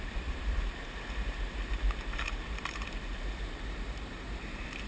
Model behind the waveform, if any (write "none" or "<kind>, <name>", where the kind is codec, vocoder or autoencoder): vocoder, BigVGAN v2